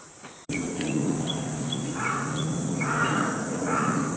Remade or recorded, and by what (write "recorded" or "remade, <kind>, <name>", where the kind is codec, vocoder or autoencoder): remade, vocoder, Vocos